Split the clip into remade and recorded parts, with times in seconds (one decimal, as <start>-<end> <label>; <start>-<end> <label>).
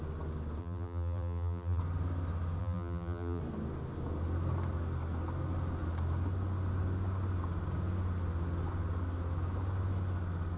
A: 0.0-0.6 recorded; 0.6-1.8 remade; 1.8-2.6 recorded; 2.6-3.4 remade; 3.4-10.6 recorded